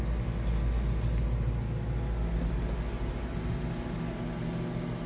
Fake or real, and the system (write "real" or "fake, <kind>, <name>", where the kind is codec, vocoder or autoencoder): real